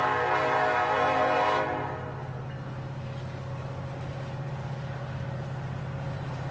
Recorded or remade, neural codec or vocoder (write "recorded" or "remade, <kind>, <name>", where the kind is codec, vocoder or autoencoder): recorded